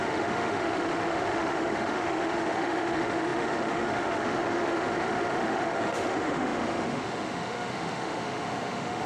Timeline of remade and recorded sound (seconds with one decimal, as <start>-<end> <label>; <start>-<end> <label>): 0.0-9.1 remade